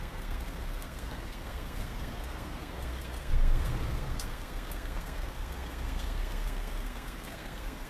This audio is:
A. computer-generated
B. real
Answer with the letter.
A